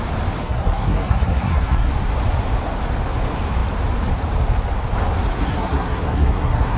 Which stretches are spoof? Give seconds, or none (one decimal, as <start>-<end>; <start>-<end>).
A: 0.4-1.9; 5.4-6.8